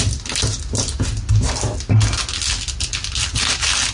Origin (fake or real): real